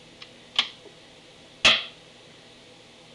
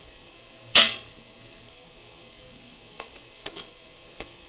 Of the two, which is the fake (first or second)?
second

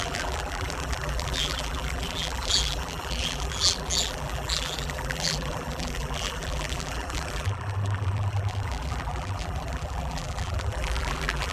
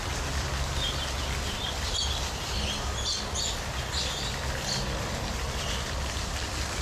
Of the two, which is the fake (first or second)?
first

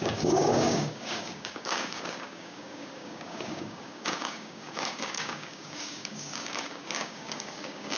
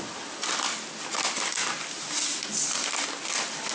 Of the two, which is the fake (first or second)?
first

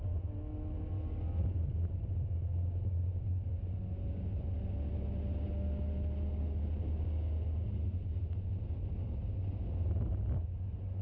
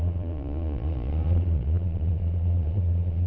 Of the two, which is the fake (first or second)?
second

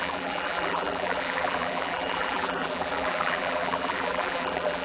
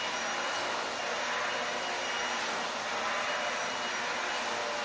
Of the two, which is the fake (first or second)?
first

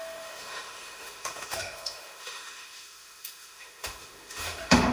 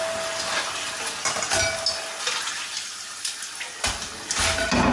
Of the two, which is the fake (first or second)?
first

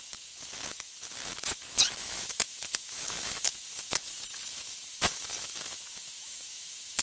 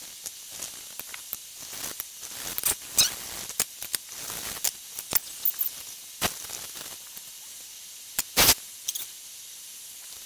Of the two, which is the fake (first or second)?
first